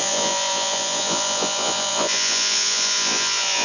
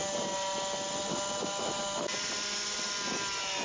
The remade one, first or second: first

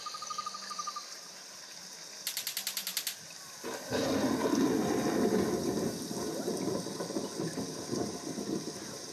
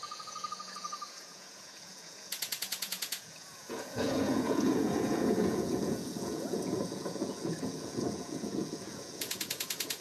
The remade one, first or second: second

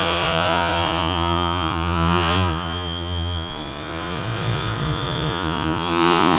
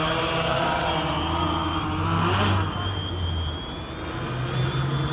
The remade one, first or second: first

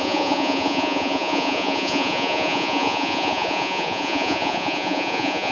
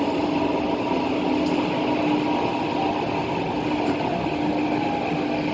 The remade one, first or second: first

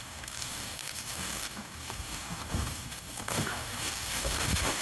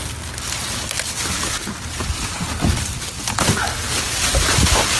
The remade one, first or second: first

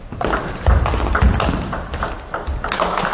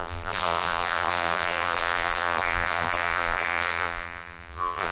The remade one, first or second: second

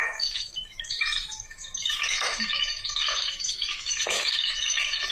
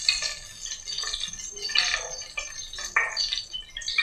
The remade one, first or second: first